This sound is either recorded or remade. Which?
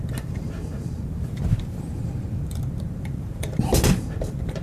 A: remade